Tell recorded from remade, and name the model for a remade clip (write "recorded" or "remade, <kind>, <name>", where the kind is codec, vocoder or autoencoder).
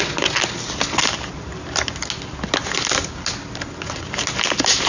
recorded